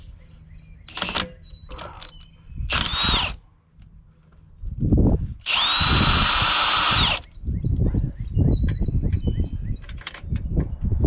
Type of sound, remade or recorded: recorded